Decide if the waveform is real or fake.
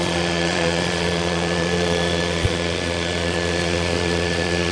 fake